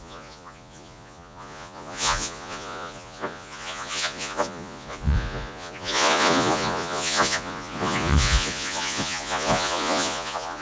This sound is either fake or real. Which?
fake